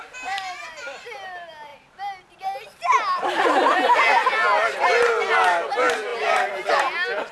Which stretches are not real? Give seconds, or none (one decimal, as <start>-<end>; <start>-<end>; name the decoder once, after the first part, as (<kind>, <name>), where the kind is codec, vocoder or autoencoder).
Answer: none